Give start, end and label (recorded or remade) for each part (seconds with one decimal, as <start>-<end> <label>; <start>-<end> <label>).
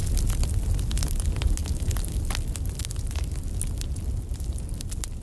0.0-5.2 recorded